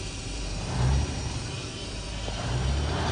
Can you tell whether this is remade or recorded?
remade